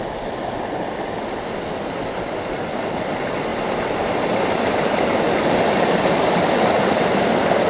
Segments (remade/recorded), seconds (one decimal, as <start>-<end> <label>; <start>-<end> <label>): 0.0-7.7 recorded